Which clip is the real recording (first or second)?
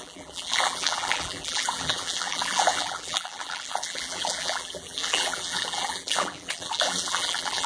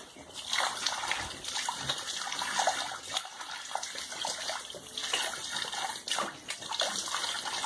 second